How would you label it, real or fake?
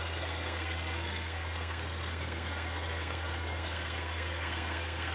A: fake